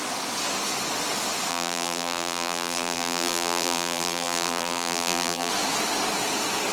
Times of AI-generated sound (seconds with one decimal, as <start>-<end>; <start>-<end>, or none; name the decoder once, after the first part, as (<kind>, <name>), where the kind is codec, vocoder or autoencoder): 1.5-5.5 (vocoder, BigVGAN v2)